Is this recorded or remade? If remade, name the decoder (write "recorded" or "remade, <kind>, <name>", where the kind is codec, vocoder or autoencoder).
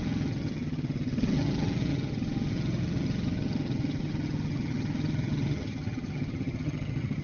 remade, vocoder, HiFi-GAN